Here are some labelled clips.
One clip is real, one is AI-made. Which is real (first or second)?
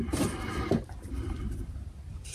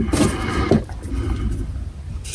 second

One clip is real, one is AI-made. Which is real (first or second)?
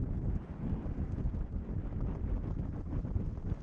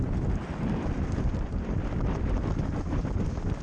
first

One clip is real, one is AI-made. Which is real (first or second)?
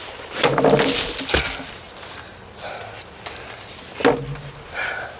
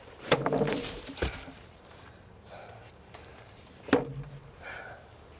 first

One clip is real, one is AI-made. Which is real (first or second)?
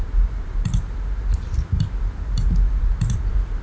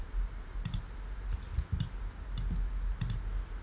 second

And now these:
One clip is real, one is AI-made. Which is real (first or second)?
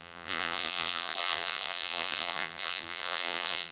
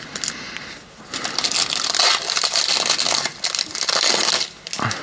second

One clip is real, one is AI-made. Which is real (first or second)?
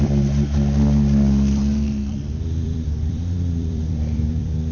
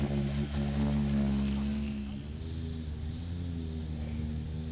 second